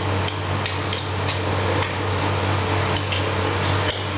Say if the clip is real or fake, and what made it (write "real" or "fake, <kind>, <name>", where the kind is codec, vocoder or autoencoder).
real